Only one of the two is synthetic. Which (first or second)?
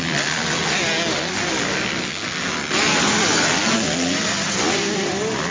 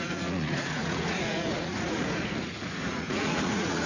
second